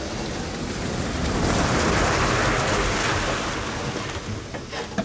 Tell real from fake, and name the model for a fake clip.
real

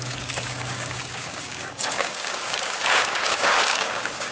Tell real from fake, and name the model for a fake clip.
fake, codec, DAC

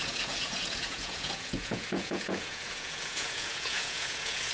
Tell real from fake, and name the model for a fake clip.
fake, vocoder, Vocos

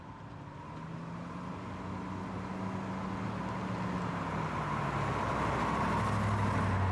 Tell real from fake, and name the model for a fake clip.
real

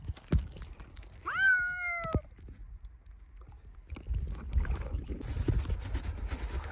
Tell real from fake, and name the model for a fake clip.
real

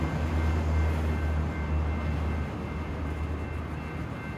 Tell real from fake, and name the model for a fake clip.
real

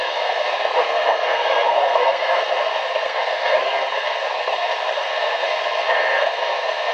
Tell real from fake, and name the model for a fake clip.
fake, codec, SNAC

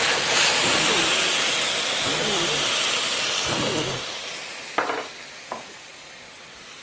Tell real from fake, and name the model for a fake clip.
real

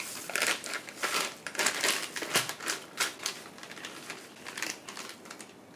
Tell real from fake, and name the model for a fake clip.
real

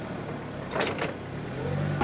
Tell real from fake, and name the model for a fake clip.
real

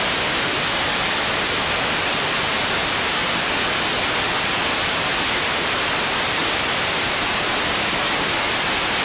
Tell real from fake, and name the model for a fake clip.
fake, vocoder, BigVGAN v2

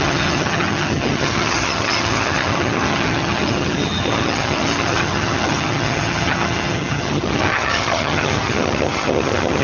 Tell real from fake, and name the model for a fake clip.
fake, vocoder, HiFi-GAN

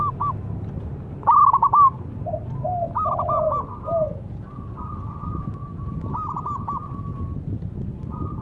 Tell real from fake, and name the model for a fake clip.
real